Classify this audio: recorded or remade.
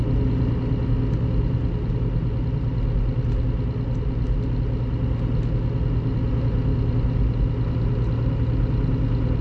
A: recorded